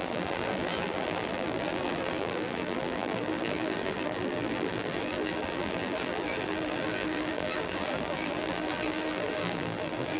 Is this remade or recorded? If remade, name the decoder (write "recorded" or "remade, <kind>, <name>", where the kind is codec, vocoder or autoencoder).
remade, vocoder, BigVGAN v2